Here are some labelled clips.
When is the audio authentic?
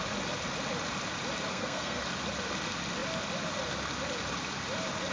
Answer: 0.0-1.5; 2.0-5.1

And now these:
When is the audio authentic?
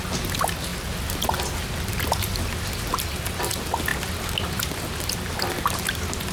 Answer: 0.0-6.3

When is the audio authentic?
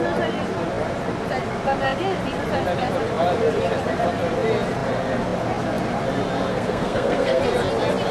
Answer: 0.0-6.5; 7.4-8.1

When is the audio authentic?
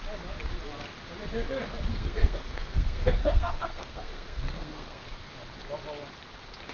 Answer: 0.0-1.9; 5.3-6.7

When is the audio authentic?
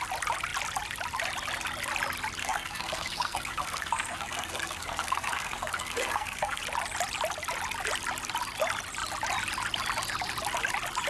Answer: 0.0-2.4; 6.6-11.1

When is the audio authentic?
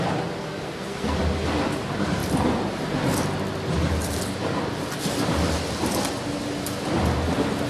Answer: 0.0-0.4; 1.2-7.7